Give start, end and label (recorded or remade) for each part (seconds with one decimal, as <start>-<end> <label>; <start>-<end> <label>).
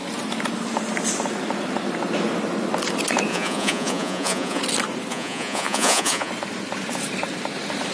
0.0-3.3 recorded; 3.3-4.6 remade; 4.6-5.1 recorded; 5.1-6.3 remade; 6.3-7.9 recorded